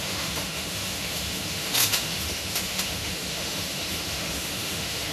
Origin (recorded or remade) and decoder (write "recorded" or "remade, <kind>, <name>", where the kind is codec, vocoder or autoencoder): remade, autoencoder, DAC-VAE